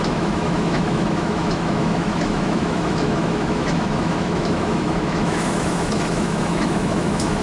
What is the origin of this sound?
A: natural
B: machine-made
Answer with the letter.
B